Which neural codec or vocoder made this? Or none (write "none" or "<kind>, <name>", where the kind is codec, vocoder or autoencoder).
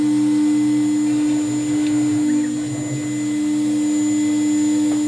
none